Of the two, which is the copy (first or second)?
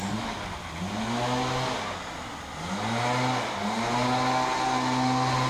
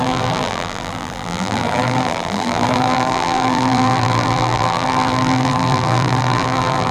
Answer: second